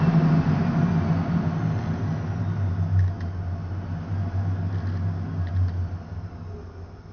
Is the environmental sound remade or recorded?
recorded